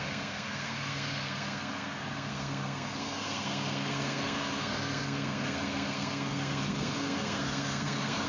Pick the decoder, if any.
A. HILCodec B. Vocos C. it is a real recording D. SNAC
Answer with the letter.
D